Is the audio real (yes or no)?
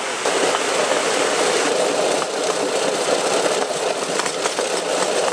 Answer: yes